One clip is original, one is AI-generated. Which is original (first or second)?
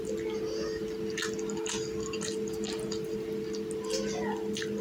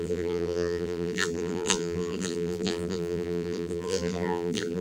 first